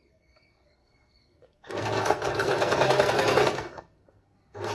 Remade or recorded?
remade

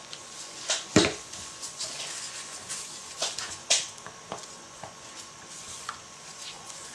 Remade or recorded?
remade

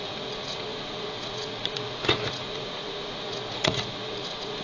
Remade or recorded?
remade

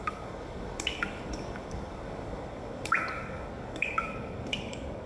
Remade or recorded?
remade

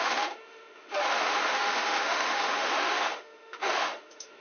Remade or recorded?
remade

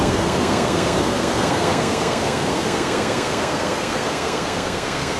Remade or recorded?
remade